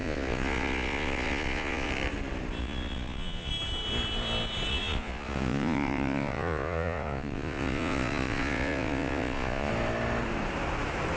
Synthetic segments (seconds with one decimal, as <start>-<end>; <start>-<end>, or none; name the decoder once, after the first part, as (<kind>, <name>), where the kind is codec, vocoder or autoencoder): 0.0-1.9 (vocoder, Vocos); 2.6-3.5; 4.7-9.7